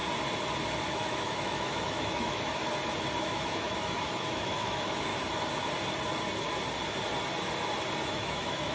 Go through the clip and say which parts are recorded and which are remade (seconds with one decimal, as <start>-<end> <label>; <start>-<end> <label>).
0.0-0.9 recorded; 0.9-2.6 remade; 2.6-3.2 recorded; 3.2-5.1 remade; 5.1-8.1 recorded; 8.1-8.7 remade